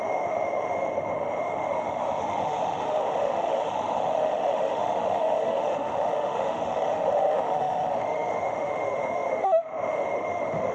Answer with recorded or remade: remade